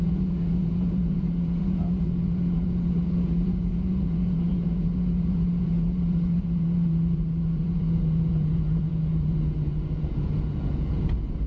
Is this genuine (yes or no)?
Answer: no